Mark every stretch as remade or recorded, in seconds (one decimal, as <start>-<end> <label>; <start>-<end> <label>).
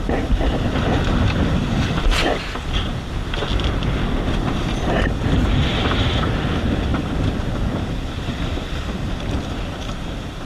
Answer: 0.0-5.4 recorded; 5.4-6.3 remade; 6.3-10.5 recorded